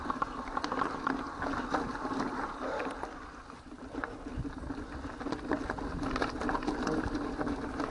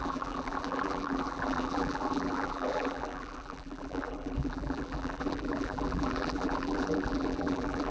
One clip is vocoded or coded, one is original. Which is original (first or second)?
first